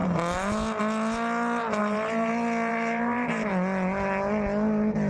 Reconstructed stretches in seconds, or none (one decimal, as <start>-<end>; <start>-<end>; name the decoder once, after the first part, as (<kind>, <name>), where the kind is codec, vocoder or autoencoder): 1.8-2.3 (vocoder, BigVGAN v2); 2.7-3.5